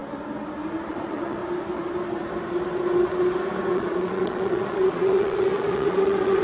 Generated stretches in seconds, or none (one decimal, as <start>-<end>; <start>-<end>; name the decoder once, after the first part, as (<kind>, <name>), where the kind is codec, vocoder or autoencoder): 0.9-1.4 (vocoder, Vocos); 3.7-6.4